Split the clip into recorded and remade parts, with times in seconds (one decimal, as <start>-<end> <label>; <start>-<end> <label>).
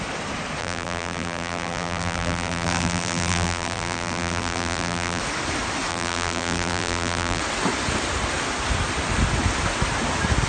0.0-0.6 recorded; 0.6-5.2 remade; 5.2-5.9 recorded; 5.9-7.4 remade; 7.4-10.5 recorded